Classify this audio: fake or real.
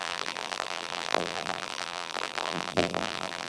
fake